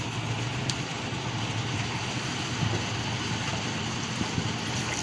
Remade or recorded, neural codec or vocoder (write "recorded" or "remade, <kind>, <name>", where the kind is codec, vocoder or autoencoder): recorded